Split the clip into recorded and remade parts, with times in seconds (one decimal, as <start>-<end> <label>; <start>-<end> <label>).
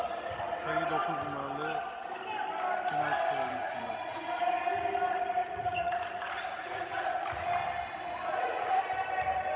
0.0-3.5 recorded; 3.5-4.4 remade; 4.4-5.4 recorded; 5.4-7.5 remade; 7.5-8.2 recorded; 8.2-8.8 remade; 8.8-9.6 recorded